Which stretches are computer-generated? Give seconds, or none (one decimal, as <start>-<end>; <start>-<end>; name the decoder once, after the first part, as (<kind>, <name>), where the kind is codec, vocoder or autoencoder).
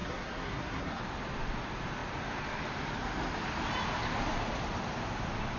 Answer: 0.0-1.0 (codec, SNAC)